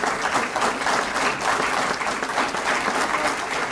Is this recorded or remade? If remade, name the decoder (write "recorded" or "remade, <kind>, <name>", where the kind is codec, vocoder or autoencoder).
recorded